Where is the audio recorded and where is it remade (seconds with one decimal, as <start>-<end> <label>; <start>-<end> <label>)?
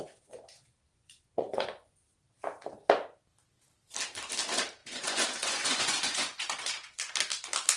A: 0.0-0.9 recorded; 0.9-2.2 remade; 2.2-4.8 recorded; 4.8-7.0 remade; 7.0-7.8 recorded